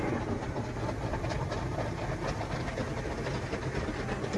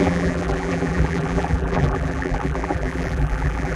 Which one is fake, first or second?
second